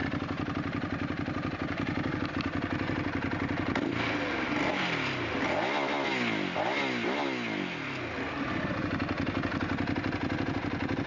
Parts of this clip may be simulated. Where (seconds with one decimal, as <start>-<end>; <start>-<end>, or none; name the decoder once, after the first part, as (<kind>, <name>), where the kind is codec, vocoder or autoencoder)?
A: 0.0-2.3 (vocoder, BigVGAN v2)